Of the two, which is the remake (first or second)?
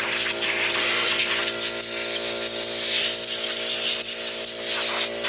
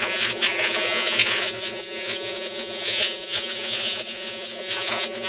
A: second